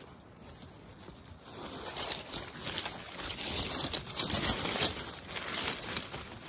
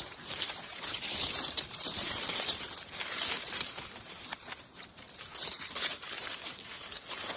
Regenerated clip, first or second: second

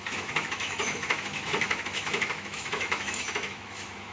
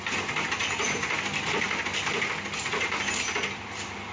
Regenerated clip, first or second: first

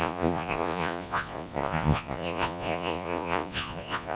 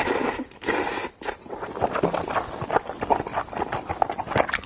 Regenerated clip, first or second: first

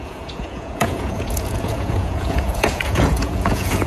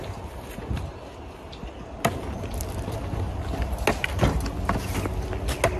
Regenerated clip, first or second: first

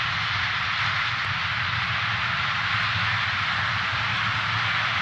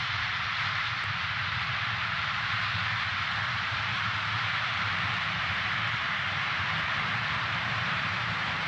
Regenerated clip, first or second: second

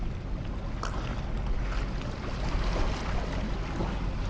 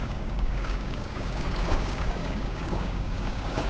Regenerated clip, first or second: second